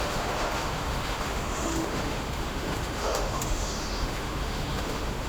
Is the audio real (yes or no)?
no